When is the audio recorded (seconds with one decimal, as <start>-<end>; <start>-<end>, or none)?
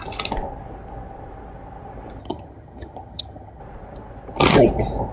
0.0-2.2; 3.6-5.1